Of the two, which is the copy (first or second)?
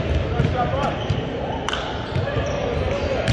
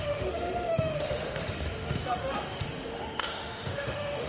second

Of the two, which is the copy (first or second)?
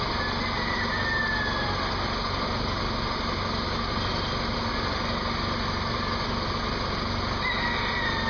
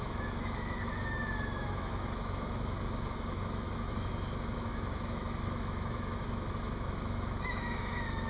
second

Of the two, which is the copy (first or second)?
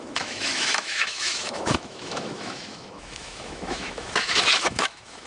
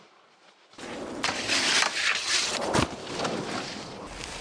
first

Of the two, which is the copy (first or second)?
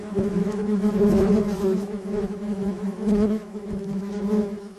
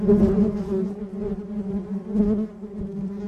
first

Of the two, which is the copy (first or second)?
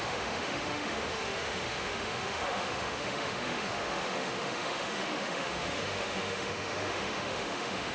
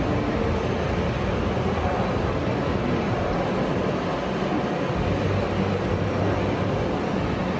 first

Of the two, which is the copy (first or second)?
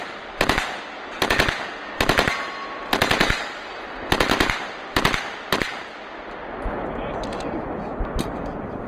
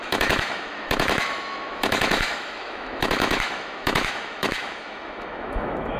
second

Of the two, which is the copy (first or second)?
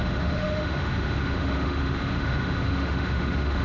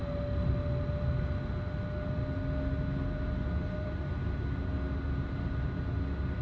first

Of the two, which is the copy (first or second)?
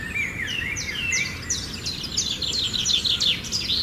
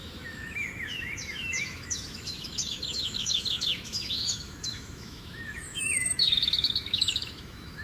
second